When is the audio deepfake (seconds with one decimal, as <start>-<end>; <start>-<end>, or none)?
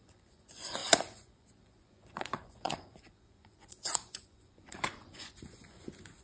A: 0.0-6.2